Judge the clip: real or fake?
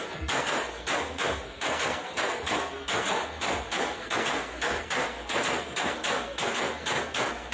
fake